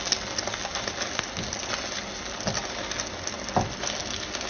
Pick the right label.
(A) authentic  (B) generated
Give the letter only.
A